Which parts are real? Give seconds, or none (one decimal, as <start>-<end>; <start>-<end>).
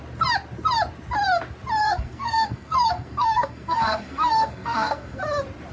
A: 0.0-1.8; 5.2-5.7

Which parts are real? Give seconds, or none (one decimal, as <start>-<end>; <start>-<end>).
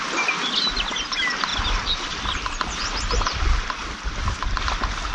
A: 0.0-5.1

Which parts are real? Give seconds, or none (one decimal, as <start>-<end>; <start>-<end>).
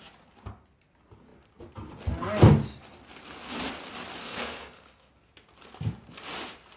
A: 0.0-4.2; 5.1-6.8